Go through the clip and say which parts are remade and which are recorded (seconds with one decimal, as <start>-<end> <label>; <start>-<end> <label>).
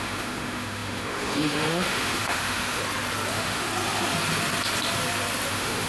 0.0-2.8 remade; 2.8-3.3 recorded; 3.3-3.7 remade; 3.7-5.5 recorded; 5.5-5.9 remade